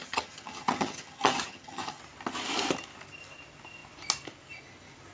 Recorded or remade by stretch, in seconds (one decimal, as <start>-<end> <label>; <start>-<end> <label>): 0.0-2.0 remade; 2.0-5.1 recorded